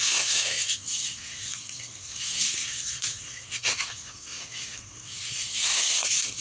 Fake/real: fake